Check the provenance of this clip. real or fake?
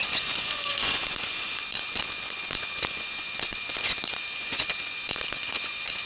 fake